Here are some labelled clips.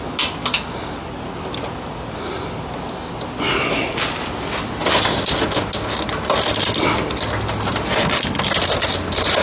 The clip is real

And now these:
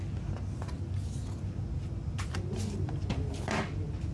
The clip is real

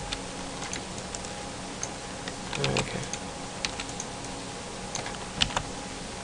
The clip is real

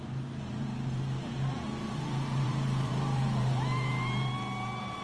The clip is fake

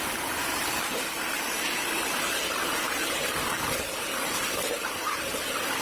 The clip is fake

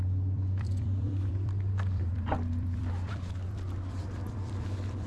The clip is fake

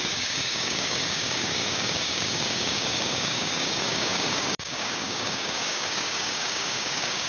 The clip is fake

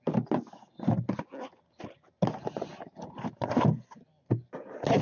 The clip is real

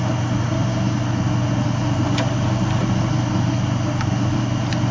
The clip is real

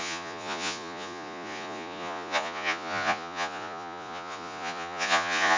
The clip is fake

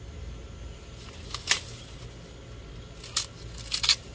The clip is real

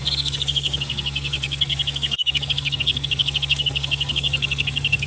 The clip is fake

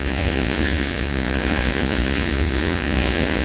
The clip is fake